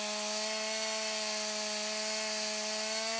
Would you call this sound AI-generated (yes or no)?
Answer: no